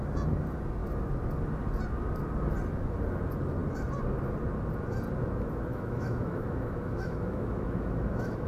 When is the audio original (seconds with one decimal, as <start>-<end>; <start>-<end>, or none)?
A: 0.0-5.7